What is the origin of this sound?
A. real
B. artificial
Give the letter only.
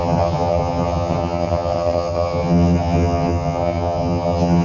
B